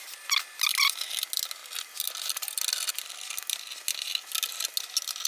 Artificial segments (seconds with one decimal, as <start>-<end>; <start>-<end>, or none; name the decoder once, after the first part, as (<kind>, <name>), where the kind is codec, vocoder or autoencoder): none